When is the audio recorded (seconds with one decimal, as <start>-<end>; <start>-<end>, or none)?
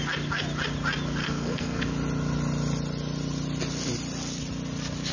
0.0-1.2; 1.8-5.1